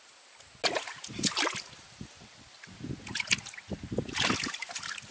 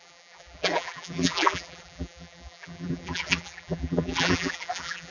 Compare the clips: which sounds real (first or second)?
first